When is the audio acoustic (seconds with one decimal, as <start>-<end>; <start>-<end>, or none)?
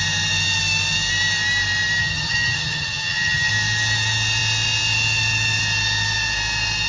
0.0-2.0; 3.5-6.9